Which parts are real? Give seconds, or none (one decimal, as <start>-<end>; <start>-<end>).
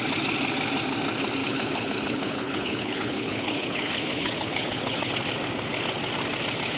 0.0-1.4; 5.1-6.8